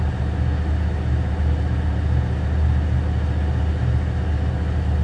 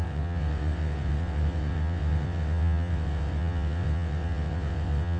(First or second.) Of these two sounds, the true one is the first